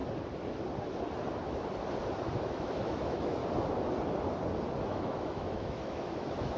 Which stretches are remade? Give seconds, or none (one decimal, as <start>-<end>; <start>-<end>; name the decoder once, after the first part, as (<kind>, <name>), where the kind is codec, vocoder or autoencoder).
2.4-3.4 (autoencoder, DAC-VAE); 4.8-6.6